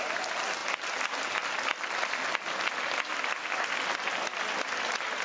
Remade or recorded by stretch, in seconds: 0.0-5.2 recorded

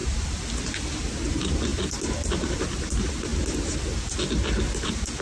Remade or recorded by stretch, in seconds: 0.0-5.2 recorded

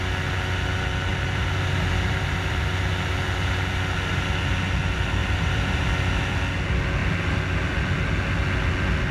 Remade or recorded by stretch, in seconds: 0.0-1.1 recorded; 1.1-2.6 remade; 2.6-5.2 recorded; 5.2-5.9 remade; 5.9-9.1 recorded